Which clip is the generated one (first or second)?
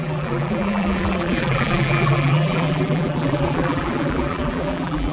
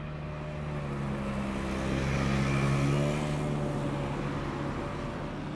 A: first